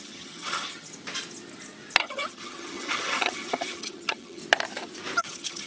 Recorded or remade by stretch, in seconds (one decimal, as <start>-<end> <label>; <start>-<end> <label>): 0.0-0.9 remade; 0.9-2.0 recorded; 2.0-4.4 remade; 4.4-5.2 recorded; 5.2-5.7 remade